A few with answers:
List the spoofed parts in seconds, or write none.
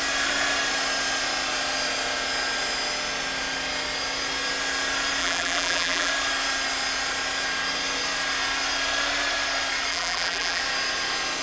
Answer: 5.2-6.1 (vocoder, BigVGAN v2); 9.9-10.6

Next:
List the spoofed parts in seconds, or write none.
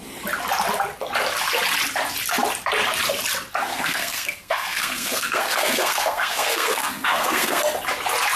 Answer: 3.7-7.6 (codec, SNAC)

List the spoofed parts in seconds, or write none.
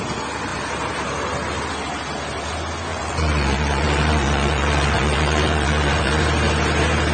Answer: 2.9-6.2 (vocoder, Vocos)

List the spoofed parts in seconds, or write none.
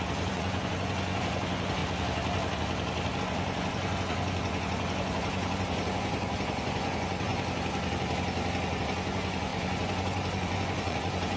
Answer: 0.0-1.8 (vocoder, Vocos); 3.2-7.3; 8.8-11.4